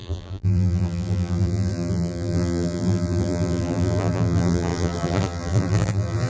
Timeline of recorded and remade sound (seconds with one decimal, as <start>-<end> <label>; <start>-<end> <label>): 0.0-6.3 remade

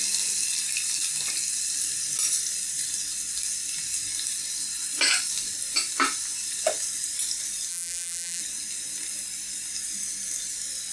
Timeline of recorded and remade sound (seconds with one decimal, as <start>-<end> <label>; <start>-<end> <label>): 0.0-7.7 recorded; 7.7-8.4 remade; 8.4-10.9 recorded